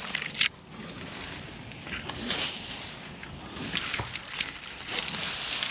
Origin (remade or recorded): recorded